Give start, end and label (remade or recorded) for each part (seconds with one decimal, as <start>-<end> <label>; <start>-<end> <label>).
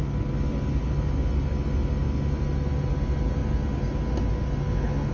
0.0-5.1 recorded